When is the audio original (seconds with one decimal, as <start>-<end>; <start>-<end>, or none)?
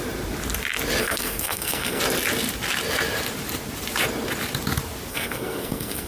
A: 0.0-1.0; 2.0-5.1